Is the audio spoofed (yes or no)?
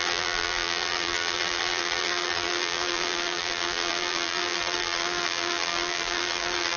yes